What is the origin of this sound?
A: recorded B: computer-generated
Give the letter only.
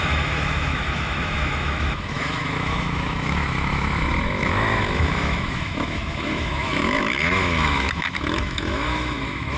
B